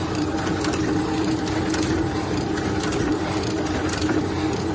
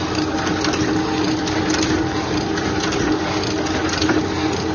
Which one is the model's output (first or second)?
first